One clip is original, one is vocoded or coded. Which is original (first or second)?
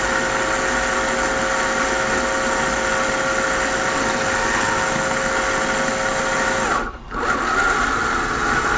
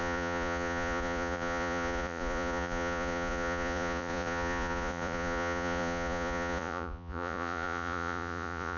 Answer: first